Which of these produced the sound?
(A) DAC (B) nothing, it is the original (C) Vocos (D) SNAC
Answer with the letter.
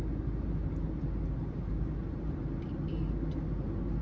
B